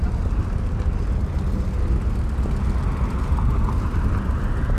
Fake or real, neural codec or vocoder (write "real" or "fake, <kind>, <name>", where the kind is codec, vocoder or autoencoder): real